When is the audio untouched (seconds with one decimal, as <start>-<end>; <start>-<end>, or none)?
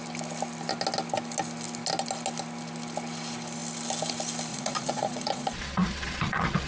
0.0-4.5